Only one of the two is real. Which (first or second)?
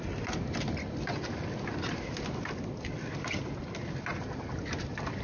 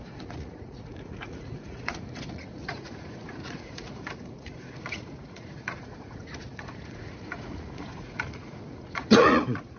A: first